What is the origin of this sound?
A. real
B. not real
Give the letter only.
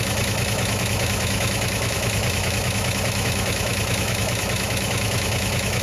B